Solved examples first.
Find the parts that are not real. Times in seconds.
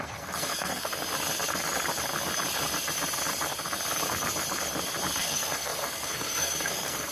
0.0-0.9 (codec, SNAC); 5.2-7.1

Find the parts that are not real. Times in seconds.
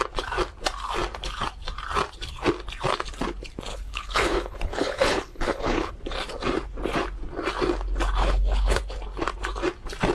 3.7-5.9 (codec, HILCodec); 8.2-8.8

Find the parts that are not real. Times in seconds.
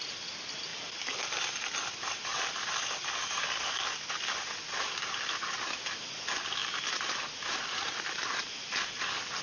6.6-8.2 (vocoder, BigVGAN v2)